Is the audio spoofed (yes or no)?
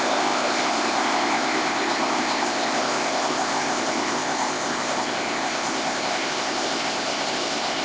yes